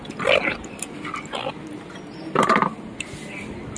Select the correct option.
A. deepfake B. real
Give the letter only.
B